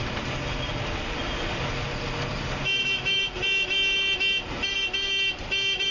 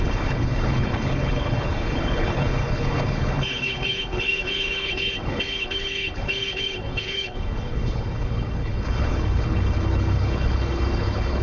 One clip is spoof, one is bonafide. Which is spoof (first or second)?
second